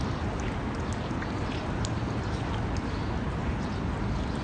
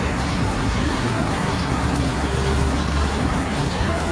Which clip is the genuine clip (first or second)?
first